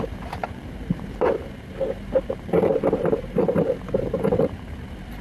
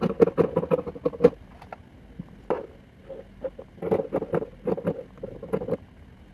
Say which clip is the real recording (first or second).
second